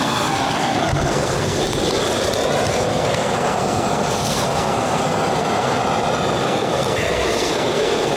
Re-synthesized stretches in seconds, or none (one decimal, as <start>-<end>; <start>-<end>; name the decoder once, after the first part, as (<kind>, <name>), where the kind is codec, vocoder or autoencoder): 0.0-1.6 (codec, SNAC); 2.7-5.8; 6.4-8.2